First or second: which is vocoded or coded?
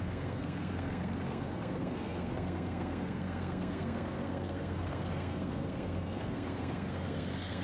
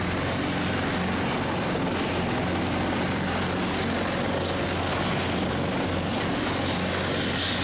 first